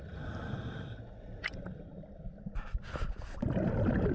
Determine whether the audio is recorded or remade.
recorded